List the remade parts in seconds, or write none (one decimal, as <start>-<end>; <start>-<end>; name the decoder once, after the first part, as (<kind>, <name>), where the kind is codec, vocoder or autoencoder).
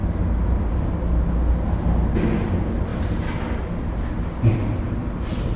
none